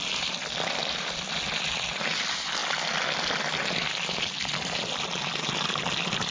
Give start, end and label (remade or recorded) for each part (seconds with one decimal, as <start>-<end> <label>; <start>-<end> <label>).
0.0-6.3 recorded